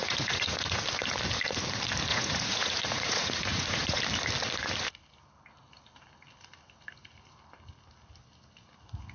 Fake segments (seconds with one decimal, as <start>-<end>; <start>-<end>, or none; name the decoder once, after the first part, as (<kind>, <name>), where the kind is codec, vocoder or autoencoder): 0.0-0.8 (vocoder, Vocos); 2.1-4.0